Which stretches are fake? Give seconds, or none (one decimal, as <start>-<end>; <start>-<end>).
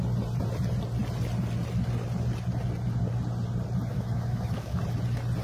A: 3.9-4.8